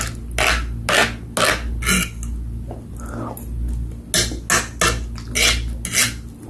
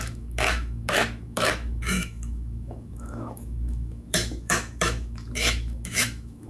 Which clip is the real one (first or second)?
first